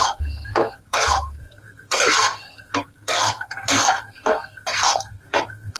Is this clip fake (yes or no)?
yes